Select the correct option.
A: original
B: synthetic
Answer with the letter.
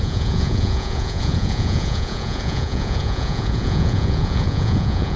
B